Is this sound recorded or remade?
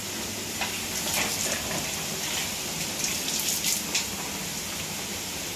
recorded